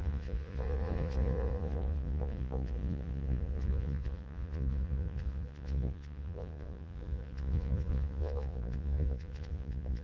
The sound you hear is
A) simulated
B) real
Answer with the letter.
A